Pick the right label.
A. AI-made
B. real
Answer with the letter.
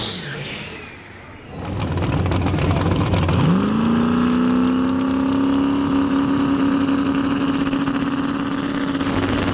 B